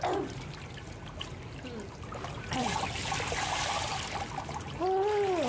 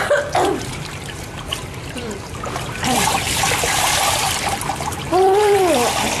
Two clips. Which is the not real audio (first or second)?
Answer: second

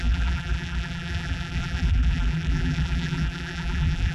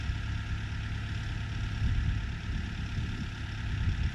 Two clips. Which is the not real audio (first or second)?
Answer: first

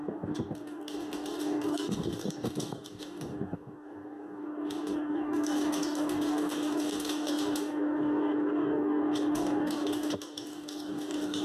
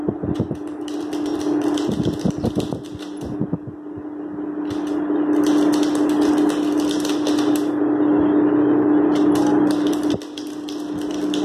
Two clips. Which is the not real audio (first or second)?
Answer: first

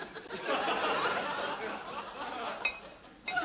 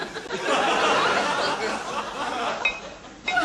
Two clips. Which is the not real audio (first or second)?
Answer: first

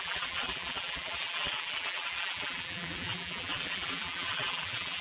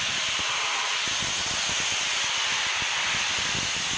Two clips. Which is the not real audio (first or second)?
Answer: first